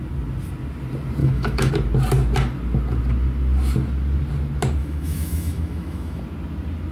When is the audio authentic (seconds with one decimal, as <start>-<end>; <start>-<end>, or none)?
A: 0.0-1.2; 1.7-4.8; 6.2-6.9